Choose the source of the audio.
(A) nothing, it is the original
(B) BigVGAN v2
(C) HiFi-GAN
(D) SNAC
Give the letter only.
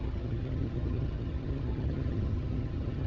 C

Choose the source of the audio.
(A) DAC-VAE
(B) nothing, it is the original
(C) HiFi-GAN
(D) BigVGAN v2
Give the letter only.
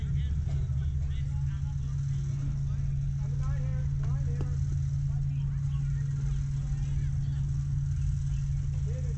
B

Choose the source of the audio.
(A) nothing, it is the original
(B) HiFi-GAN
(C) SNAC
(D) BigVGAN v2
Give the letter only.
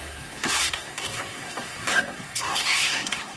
C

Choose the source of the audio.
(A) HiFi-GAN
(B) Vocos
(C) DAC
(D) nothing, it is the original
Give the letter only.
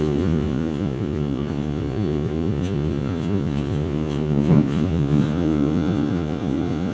B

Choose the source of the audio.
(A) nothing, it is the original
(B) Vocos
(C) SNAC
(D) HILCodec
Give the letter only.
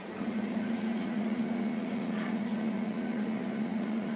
B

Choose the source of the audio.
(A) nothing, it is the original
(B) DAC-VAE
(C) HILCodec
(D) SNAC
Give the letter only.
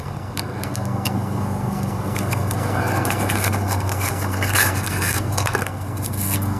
D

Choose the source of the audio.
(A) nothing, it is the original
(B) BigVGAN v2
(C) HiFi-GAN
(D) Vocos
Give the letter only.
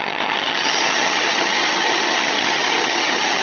C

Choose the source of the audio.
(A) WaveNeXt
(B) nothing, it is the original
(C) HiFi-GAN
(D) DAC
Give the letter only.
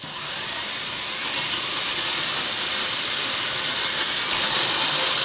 B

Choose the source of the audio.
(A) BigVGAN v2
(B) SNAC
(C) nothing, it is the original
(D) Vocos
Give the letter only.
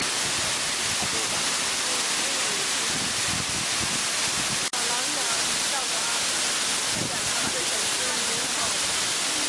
C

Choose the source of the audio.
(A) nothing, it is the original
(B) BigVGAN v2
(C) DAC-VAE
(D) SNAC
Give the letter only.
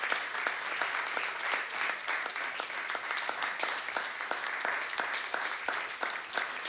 A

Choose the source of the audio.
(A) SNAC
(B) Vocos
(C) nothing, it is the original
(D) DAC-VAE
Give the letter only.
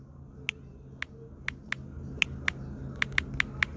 C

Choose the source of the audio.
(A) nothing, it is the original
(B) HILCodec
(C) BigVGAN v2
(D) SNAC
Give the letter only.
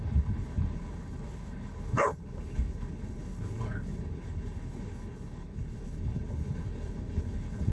B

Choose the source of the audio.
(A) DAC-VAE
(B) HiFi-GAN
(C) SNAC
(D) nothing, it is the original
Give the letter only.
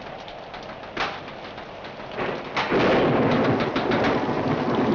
D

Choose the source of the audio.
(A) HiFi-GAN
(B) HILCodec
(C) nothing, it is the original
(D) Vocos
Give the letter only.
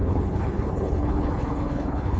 B